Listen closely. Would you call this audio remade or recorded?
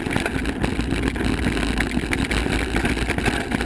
recorded